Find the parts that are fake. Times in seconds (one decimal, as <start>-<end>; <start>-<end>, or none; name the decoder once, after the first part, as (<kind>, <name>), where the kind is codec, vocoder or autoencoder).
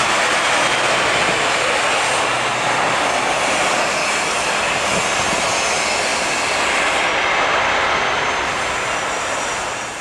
6.1-7.5 (vocoder, BigVGAN v2)